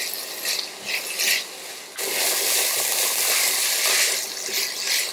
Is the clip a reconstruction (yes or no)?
no